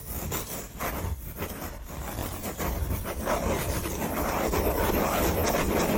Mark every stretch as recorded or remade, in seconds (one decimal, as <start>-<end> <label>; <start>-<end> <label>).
0.0-2.2 recorded; 2.2-3.3 remade; 3.3-6.0 recorded